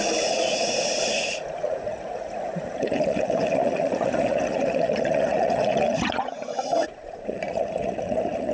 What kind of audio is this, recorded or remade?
remade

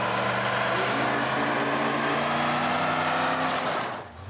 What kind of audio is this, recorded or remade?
recorded